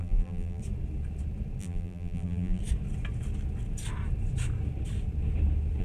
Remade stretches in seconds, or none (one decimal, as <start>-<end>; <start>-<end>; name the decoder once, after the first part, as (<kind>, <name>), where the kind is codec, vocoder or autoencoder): 0.0-0.6 (vocoder, BigVGAN v2); 1.6-2.6